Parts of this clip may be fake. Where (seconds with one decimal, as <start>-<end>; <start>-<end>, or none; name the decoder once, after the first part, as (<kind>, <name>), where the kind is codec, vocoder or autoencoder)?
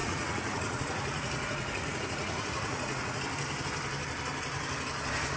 0.0-3.2 (vocoder, Vocos)